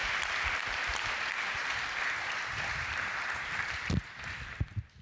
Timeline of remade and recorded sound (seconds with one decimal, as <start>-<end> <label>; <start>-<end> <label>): 0.0-1.1 remade; 1.1-1.6 recorded; 1.6-4.6 remade; 4.6-5.0 recorded